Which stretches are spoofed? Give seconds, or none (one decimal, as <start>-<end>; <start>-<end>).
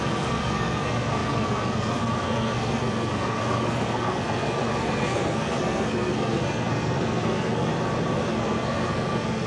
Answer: 0.0-7.7; 8.3-9.5